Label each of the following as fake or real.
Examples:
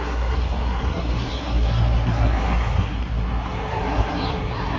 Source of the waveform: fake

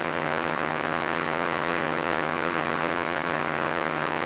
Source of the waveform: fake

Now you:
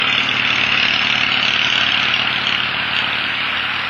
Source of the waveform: real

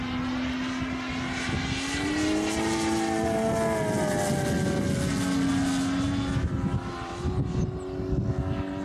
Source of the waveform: real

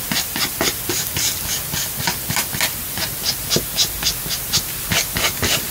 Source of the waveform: real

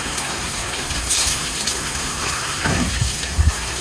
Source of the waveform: fake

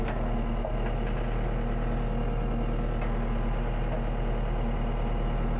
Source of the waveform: real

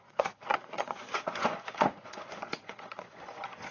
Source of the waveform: fake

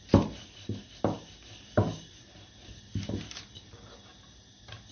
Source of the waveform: real